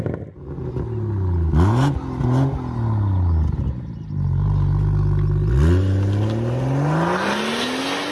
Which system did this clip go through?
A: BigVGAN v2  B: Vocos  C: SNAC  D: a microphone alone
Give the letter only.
D